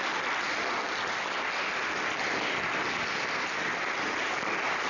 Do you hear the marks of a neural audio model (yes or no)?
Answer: no